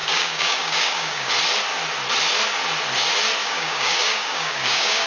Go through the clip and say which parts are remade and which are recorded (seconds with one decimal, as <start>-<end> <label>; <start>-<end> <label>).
0.0-1.3 remade; 1.3-3.4 recorded; 3.4-5.1 remade

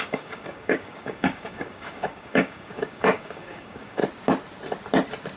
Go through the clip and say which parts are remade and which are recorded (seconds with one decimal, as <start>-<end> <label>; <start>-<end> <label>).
0.0-4.0 remade; 4.0-5.4 recorded

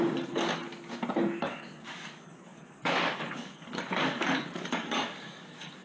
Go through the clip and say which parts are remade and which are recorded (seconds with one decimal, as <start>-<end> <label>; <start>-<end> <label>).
0.0-0.6 remade; 0.6-1.4 recorded; 1.4-5.8 remade

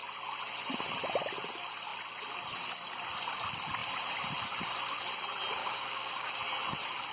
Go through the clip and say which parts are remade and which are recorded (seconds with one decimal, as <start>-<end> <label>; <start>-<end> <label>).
0.0-5.6 recorded; 5.6-6.3 remade; 6.3-7.1 recorded

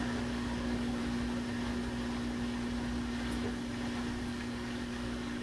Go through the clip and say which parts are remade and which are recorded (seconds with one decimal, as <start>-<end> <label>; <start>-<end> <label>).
0.0-1.0 remade; 1.0-4.2 recorded; 4.2-5.4 remade